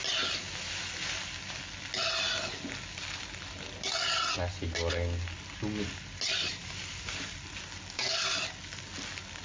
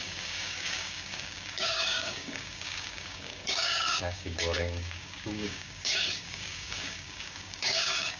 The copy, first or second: second